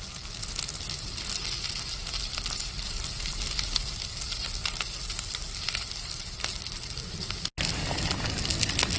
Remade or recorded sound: recorded